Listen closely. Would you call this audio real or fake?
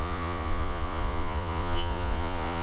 fake